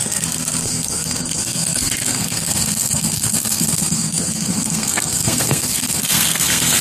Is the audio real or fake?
fake